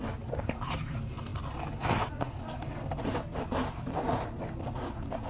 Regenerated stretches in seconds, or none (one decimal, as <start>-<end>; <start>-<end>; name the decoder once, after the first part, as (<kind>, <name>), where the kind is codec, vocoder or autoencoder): 3.6-4.4 (vocoder, BigVGAN v2)